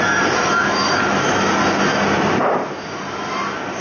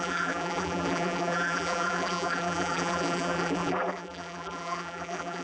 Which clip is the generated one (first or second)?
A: second